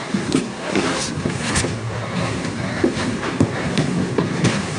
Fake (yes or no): yes